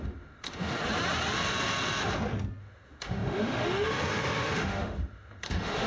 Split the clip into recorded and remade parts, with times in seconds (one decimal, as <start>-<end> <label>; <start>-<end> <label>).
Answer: 0.0-0.8 remade; 0.8-2.6 recorded; 2.6-5.9 remade